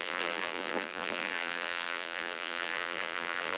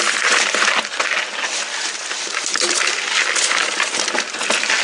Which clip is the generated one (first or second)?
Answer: first